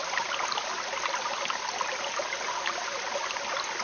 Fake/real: real